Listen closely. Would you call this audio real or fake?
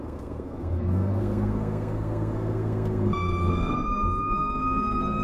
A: fake